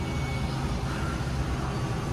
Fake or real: real